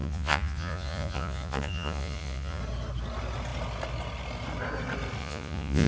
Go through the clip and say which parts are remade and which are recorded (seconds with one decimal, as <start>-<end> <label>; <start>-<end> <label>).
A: 0.0-2.6 remade; 2.6-5.2 recorded; 5.2-5.9 remade